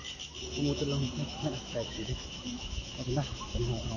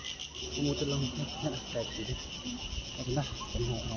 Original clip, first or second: second